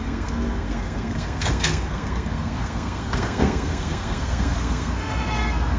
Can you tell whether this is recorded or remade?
remade